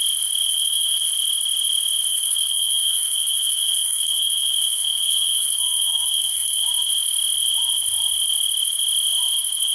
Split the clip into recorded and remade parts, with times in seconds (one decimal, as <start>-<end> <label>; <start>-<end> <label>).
0.0-0.4 recorded; 0.4-1.1 remade; 1.1-2.1 recorded; 2.1-6.6 remade; 6.6-9.7 recorded